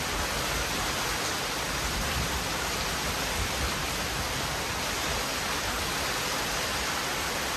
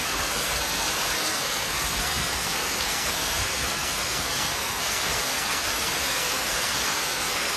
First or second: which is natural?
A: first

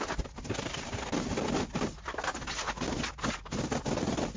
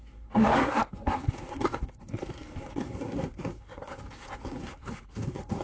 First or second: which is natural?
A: first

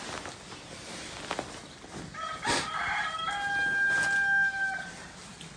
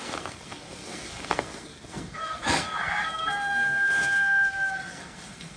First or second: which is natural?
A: first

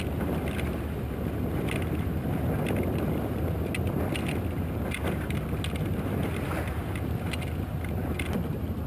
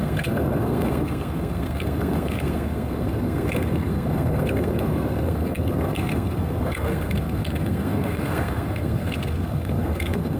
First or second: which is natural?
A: first